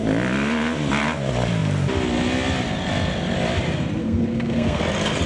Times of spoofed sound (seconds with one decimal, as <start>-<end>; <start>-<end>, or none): 4.0-4.8